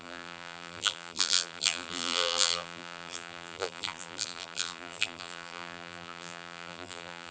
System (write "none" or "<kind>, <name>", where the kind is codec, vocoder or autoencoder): vocoder, BigVGAN v2